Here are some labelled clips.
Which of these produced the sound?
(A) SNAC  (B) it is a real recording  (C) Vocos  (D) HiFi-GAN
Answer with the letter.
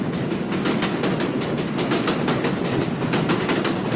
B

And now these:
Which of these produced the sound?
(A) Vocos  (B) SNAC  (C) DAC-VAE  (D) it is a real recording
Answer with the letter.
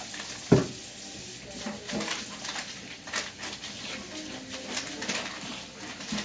D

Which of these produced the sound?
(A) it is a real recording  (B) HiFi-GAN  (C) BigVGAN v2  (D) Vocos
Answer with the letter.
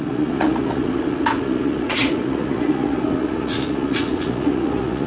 D